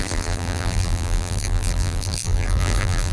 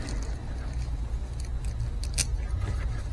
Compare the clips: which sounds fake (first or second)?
first